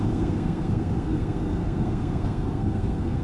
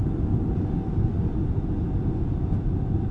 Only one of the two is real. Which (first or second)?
second